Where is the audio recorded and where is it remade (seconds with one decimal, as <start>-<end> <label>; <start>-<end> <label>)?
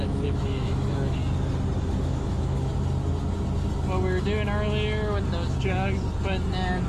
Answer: 0.0-1.2 remade; 1.2-2.0 recorded; 2.0-2.7 remade; 2.7-6.9 recorded